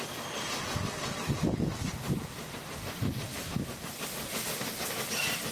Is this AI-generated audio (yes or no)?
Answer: no